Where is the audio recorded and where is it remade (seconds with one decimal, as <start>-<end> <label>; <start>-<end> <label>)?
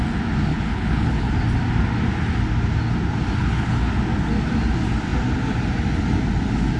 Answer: 0.0-0.5 recorded; 0.5-1.3 remade; 1.3-3.4 recorded; 3.4-3.9 remade; 3.9-6.8 recorded